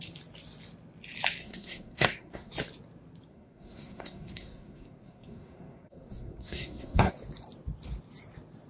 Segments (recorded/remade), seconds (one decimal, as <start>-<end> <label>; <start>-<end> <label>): 0.0-1.4 recorded; 1.4-2.5 remade; 2.5-3.3 recorded; 3.3-7.1 remade; 7.1-8.7 recorded

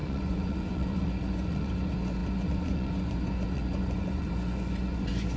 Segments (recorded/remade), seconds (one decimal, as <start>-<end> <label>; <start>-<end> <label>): 0.0-5.4 remade

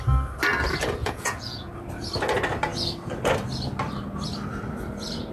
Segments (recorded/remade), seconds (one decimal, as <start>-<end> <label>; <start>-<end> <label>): 0.0-1.0 recorded; 1.0-1.7 remade; 1.7-5.3 recorded

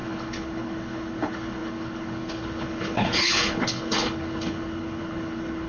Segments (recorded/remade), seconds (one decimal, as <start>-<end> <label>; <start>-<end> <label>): 0.0-5.7 remade

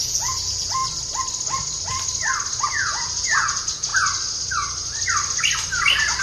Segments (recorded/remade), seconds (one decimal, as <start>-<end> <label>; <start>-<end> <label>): 0.0-0.8 remade; 0.8-2.6 recorded; 2.6-3.9 remade; 3.9-6.2 recorded